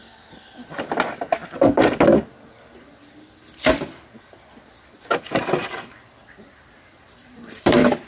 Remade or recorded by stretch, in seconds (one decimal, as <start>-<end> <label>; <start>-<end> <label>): 0.0-6.2 recorded; 6.2-8.1 remade